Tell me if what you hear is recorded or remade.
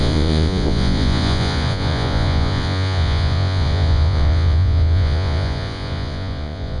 remade